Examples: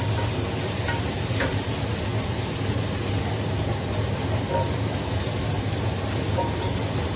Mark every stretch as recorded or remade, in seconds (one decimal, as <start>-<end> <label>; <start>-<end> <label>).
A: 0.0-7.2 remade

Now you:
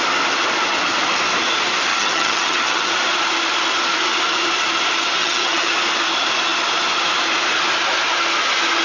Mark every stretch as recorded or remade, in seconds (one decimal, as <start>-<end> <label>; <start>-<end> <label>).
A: 0.0-1.9 recorded; 1.9-2.9 remade; 2.9-5.2 recorded; 5.2-5.7 remade; 5.7-8.8 recorded

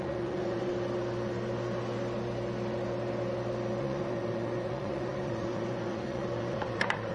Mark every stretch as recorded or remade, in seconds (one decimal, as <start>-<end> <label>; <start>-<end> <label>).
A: 0.0-0.7 remade; 0.7-3.8 recorded; 3.8-7.1 remade

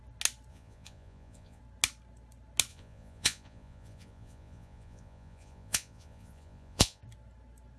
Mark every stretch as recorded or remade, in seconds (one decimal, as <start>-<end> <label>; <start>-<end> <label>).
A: 0.0-0.5 recorded; 0.5-1.6 remade; 1.6-2.7 recorded; 2.7-7.0 remade; 7.0-7.8 recorded

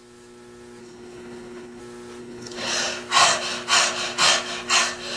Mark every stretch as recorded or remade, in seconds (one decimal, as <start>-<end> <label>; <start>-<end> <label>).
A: 0.0-0.8 recorded; 0.8-1.8 remade; 1.8-2.2 recorded; 2.2-2.7 remade; 2.7-5.2 recorded

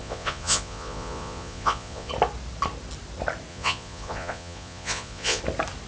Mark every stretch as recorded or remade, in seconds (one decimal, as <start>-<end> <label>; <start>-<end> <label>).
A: 0.0-2.1 remade; 2.1-3.5 recorded; 3.5-5.4 remade; 5.4-5.9 recorded